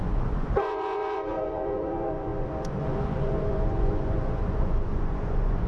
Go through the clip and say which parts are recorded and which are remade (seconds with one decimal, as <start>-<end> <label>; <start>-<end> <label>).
0.0-5.7 remade